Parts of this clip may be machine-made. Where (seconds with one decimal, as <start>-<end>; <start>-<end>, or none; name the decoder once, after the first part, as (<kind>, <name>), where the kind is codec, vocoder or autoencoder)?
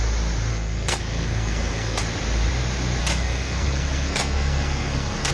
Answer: 0.5-2.0 (codec, SNAC); 3.0-5.3